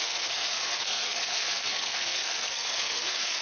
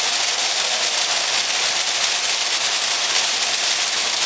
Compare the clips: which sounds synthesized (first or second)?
first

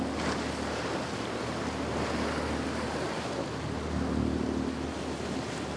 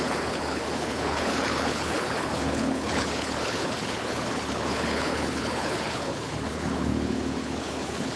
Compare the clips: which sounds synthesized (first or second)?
second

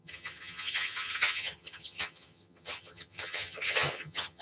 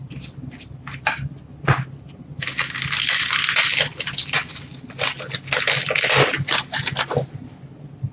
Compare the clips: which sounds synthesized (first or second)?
first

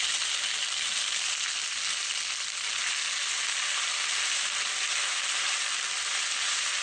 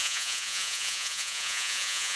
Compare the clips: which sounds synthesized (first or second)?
second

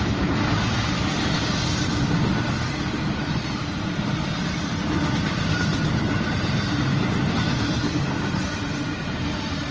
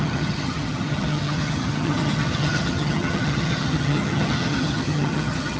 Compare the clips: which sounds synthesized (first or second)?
second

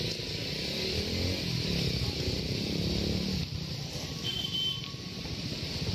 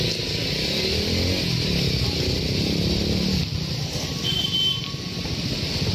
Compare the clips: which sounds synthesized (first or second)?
first